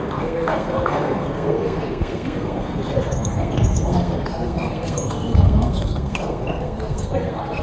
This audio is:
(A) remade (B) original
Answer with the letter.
A